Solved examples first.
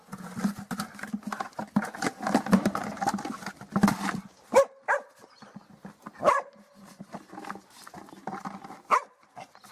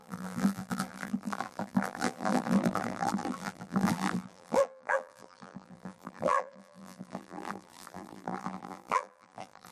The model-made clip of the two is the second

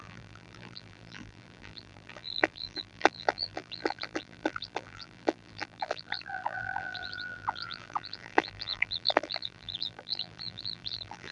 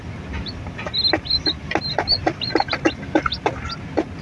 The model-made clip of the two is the first